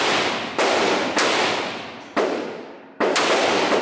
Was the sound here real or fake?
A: real